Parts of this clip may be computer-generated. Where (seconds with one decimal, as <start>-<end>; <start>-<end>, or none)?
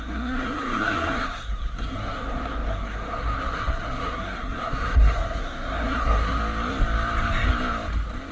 0.0-6.4